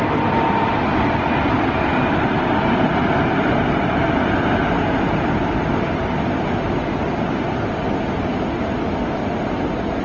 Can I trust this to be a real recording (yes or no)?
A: yes